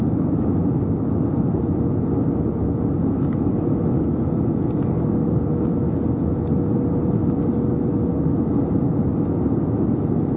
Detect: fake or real real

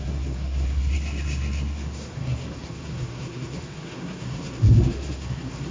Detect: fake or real fake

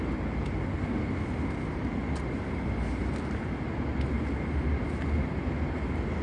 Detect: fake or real real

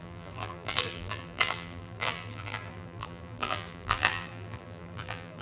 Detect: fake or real fake